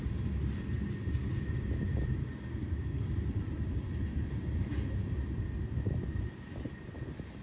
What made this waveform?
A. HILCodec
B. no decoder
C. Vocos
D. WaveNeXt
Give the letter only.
B